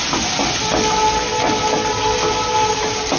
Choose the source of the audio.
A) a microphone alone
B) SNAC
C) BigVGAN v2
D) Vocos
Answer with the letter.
A